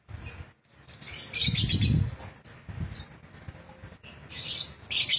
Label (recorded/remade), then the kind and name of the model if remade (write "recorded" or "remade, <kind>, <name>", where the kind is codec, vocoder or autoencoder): recorded